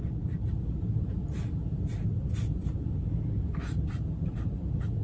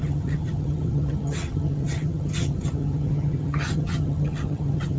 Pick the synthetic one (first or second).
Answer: second